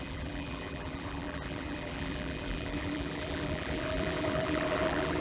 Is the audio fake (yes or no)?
yes